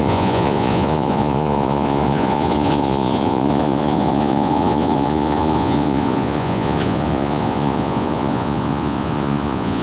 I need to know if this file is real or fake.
fake